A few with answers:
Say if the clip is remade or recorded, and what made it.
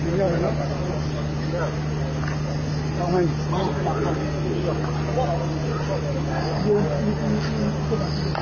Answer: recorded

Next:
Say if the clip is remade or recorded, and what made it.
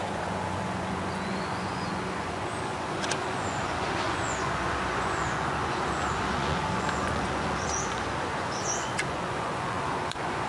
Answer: remade, vocoder, Vocos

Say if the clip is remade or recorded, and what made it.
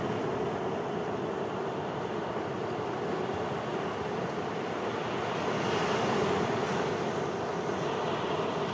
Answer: recorded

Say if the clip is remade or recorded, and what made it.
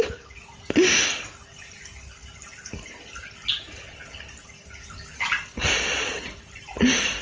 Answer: recorded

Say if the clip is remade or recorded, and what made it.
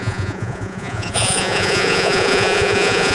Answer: remade, vocoder, Vocos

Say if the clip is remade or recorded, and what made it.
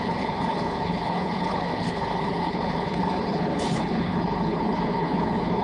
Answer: remade, codec, HILCodec